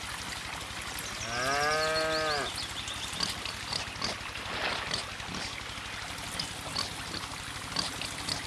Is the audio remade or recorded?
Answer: recorded